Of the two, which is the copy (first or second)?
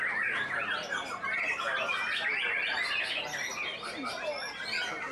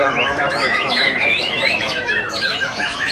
second